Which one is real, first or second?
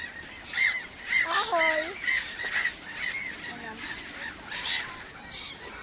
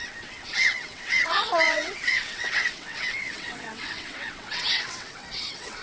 first